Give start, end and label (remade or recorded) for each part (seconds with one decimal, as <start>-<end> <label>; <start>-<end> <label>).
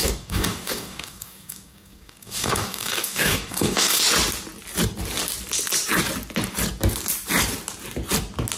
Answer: 0.0-4.0 remade; 4.0-8.6 recorded